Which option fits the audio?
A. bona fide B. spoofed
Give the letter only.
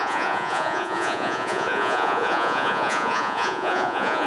B